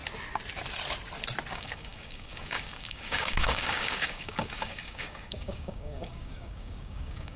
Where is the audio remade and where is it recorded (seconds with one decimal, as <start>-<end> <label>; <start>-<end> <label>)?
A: 0.0-1.5 recorded; 1.5-7.4 remade